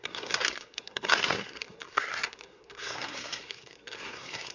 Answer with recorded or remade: remade